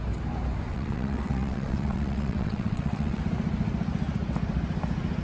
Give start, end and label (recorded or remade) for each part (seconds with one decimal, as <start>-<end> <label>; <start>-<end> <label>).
0.0-0.7 recorded; 0.7-3.2 remade; 3.2-5.2 recorded